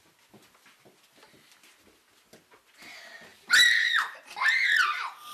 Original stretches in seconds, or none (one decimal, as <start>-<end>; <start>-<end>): 0.0-5.3

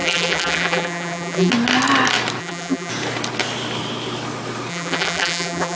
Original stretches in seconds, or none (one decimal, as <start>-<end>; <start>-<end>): 1.5-2.4; 2.9-4.7